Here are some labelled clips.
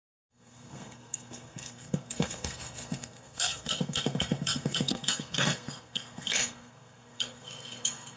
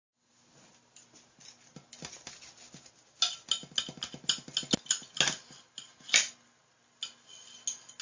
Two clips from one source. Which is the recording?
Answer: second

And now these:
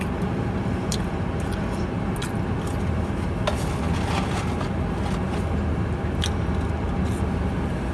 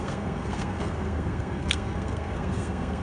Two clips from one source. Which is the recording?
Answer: first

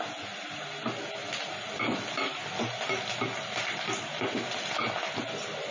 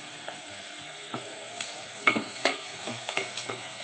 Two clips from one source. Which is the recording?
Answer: first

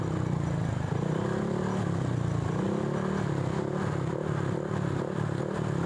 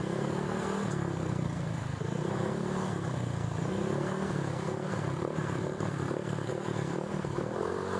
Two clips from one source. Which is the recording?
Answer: first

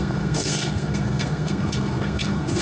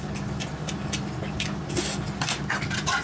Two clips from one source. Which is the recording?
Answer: second